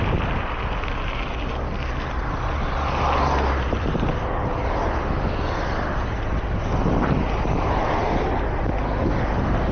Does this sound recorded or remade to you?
recorded